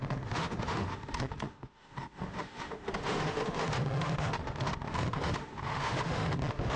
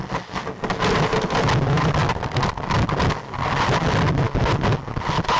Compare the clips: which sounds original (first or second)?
second